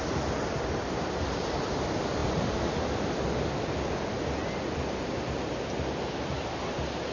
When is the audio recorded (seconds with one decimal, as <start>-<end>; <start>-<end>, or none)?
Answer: 0.0-7.1